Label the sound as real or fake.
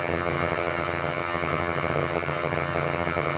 fake